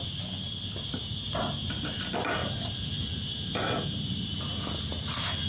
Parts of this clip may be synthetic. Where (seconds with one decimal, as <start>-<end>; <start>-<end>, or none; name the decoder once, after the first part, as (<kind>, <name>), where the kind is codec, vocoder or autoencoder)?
none